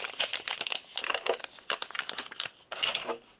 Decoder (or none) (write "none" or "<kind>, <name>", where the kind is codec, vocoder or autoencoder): none